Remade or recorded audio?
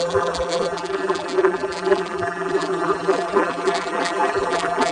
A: remade